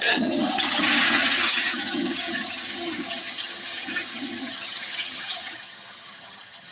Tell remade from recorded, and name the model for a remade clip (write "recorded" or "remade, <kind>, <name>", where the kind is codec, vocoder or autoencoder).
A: remade, vocoder, HiFi-GAN